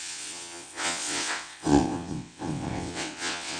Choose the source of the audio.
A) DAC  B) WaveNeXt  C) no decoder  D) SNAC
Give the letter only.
B